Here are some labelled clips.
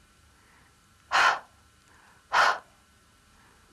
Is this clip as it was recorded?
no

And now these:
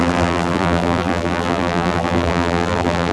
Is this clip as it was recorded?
no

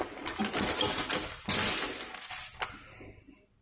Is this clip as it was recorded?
yes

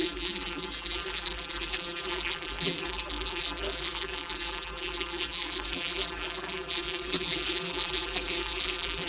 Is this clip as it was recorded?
no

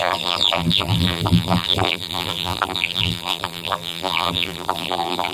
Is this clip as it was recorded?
no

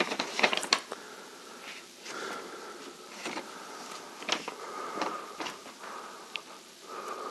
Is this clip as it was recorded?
no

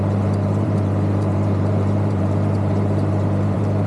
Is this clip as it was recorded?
no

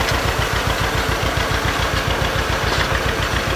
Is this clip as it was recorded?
yes